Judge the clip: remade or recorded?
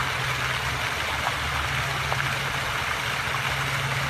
recorded